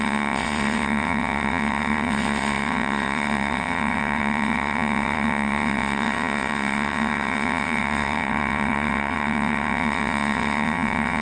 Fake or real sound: fake